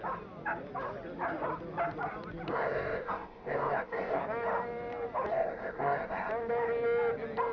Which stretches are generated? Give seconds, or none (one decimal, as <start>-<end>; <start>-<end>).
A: 2.5-4.2; 5.3-6.3

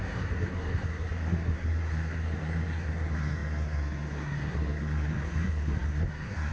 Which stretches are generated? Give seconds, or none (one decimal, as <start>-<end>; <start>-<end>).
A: 0.0-6.5

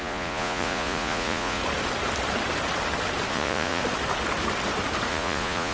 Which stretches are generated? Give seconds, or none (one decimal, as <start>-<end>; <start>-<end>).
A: 0.0-1.6; 3.3-3.8; 5.1-5.7

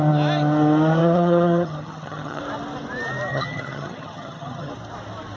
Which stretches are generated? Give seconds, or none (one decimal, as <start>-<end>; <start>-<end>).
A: 1.0-2.4; 3.3-4.7

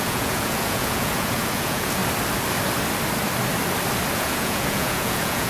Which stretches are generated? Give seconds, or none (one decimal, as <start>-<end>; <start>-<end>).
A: 0.0-2.0; 4.1-5.5

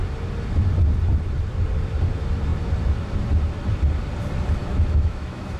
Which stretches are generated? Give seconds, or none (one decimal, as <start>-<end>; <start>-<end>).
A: 4.6-5.6